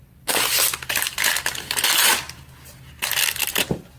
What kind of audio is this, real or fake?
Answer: real